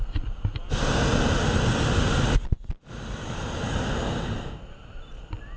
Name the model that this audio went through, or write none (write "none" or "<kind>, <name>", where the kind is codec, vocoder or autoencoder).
none